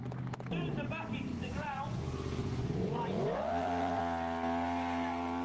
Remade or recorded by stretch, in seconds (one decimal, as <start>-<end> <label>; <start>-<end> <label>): 0.0-1.3 recorded; 1.3-2.0 remade; 2.0-2.4 recorded; 2.4-4.0 remade; 4.0-5.4 recorded